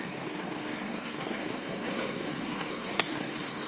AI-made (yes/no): yes